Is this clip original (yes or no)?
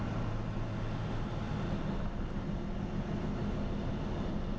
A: yes